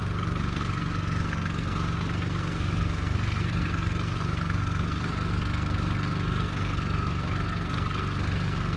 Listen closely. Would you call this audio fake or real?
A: fake